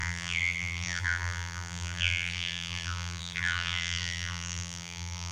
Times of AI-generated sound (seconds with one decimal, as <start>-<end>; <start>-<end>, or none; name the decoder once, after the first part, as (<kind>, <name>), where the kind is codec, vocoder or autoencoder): 0.0-5.3 (vocoder, BigVGAN v2)